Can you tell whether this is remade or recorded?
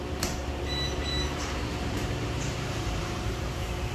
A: remade